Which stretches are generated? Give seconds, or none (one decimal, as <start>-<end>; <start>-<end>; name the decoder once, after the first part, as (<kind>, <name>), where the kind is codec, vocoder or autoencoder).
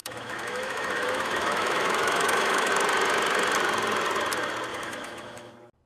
0.0-2.7 (autoencoder, DAC-VAE); 4.7-5.5